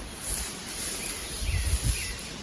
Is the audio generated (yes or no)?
no